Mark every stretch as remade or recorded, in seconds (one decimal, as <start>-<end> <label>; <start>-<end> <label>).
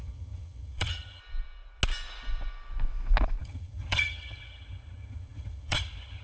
0.0-1.2 remade; 1.2-3.4 recorded; 3.4-6.2 remade